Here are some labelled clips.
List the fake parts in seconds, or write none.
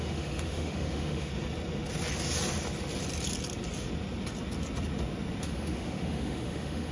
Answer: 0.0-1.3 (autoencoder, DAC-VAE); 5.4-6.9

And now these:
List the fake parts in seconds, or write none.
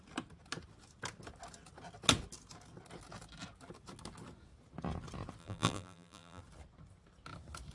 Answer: 5.4-6.4 (vocoder, BigVGAN v2)